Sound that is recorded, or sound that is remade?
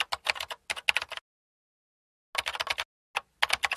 recorded